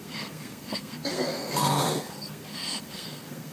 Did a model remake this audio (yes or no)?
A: yes